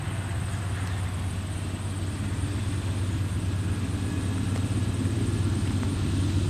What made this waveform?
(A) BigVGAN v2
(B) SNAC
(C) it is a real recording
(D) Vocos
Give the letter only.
C